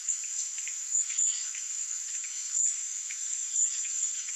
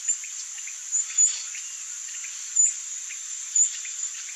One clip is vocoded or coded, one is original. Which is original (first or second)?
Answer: second